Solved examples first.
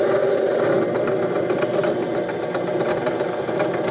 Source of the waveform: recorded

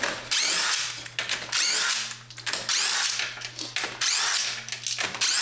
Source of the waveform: recorded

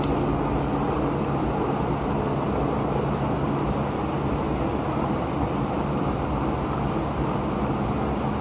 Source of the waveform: recorded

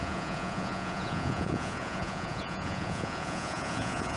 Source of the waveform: remade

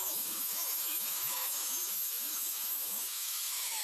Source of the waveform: remade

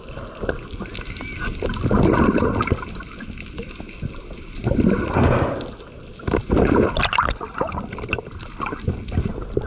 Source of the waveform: recorded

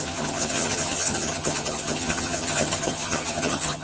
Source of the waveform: remade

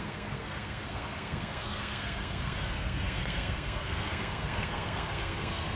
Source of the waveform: remade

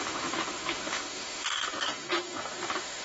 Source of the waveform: remade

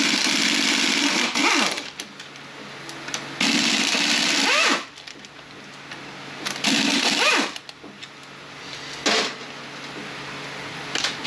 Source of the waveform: recorded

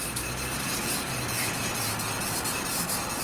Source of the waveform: recorded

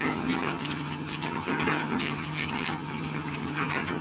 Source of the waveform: remade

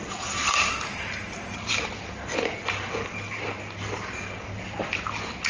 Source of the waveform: recorded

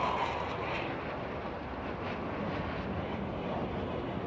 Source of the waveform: recorded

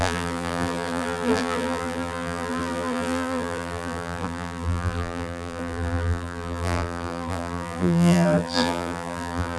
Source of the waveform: remade